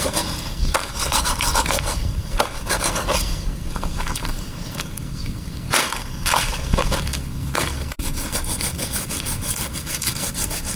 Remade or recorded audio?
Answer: remade